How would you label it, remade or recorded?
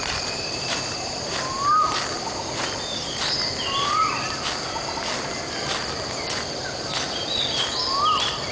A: recorded